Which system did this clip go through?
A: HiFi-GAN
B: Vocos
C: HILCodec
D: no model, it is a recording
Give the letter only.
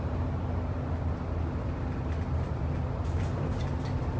D